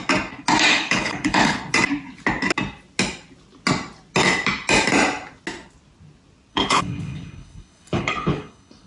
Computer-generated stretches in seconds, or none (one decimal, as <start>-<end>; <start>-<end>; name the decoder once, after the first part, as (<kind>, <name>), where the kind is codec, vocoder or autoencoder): 0.7-1.6 (codec, HILCodec); 6.5-8.9